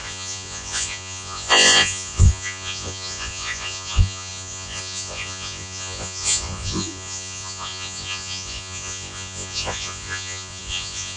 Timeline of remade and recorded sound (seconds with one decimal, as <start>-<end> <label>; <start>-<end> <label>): 0.0-11.2 remade